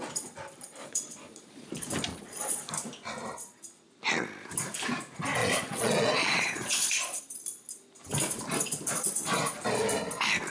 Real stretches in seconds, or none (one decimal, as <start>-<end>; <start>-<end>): 0.0-0.8; 1.7-2.1; 2.6-5.4; 7.2-10.5